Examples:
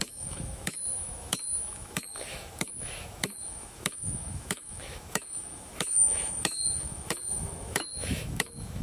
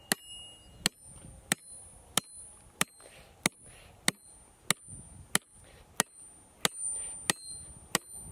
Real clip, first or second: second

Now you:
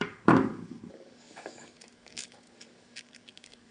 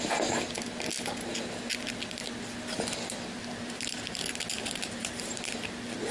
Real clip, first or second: second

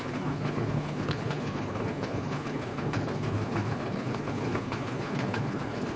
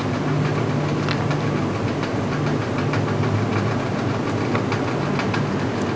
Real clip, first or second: second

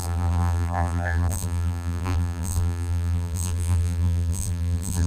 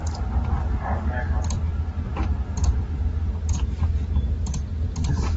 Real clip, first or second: second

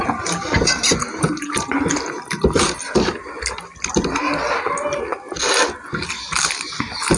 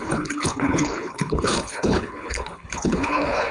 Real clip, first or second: first